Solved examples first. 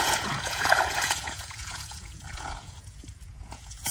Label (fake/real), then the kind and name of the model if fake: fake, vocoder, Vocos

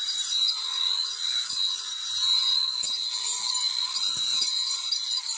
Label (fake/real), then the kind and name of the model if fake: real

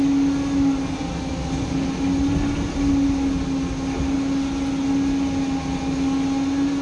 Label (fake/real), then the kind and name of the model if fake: real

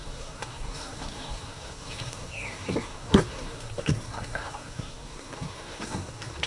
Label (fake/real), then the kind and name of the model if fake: fake, codec, SNAC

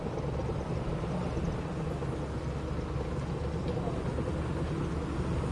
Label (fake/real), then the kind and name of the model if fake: real